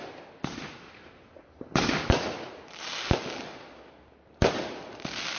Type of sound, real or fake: real